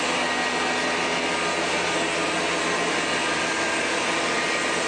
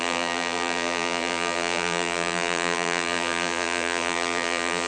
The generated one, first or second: second